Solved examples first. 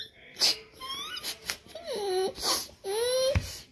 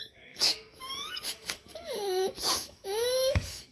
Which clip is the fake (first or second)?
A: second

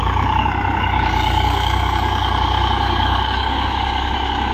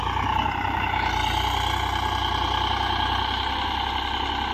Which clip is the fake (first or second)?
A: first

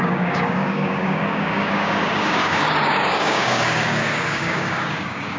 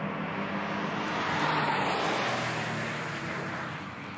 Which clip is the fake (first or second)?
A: first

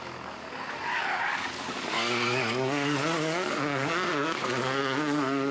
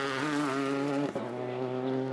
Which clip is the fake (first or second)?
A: first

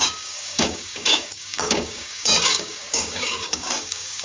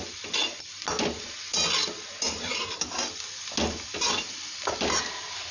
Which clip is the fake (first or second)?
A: first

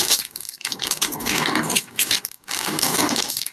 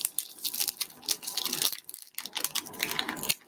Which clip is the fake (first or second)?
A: first